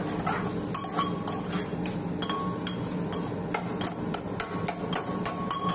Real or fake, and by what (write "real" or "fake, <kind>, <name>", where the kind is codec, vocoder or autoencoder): real